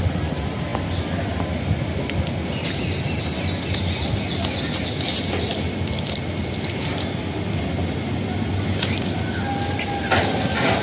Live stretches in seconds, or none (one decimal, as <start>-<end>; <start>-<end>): 0.0-10.8